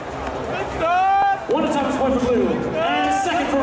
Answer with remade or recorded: recorded